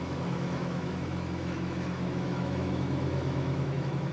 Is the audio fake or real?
fake